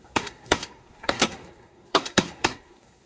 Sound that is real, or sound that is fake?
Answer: fake